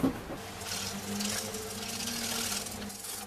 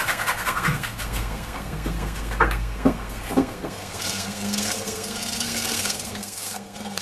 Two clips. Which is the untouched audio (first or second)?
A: first